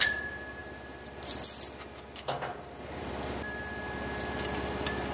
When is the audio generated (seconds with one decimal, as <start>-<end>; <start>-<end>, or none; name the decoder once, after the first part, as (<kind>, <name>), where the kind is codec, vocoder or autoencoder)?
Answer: 0.6-1.4 (vocoder, BigVGAN v2); 2.5-3.1